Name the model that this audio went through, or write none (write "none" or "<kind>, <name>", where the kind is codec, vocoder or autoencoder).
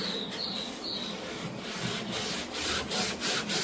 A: none